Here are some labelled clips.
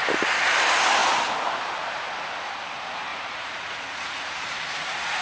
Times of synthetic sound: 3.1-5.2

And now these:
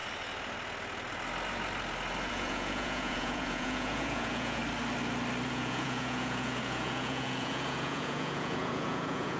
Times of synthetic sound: 2.3-4.6; 5.5-9.4